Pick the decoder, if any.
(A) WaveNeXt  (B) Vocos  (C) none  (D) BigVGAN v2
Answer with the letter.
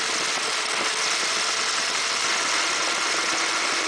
C